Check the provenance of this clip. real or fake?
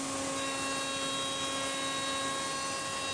real